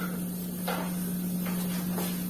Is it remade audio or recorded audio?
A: recorded